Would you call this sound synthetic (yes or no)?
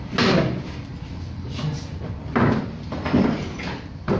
no